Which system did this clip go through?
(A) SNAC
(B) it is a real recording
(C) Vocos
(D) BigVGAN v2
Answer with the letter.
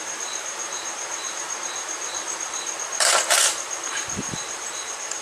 D